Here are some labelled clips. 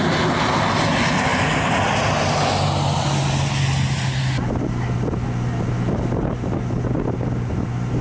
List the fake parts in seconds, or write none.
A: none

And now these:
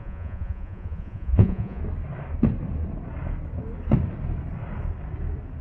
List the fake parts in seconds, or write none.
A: 0.0-1.8

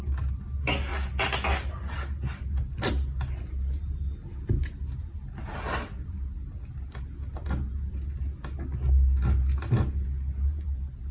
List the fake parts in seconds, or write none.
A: none

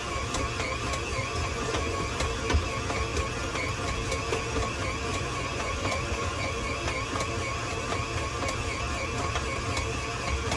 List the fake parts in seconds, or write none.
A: 1.2-2.1; 5.1-6.7

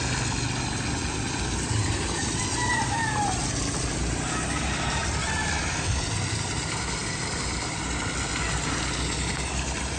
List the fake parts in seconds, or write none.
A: none

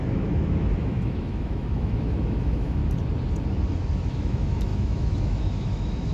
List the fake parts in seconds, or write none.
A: 0.0-2.8; 4.1-6.1